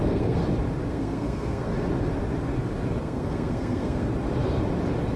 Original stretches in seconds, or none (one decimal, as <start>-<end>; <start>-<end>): 0.4-0.9; 1.7-3.0; 4.1-5.2